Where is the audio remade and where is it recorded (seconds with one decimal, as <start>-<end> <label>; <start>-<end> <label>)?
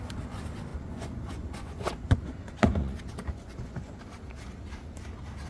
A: 0.0-0.7 recorded; 0.7-4.0 remade; 4.0-5.5 recorded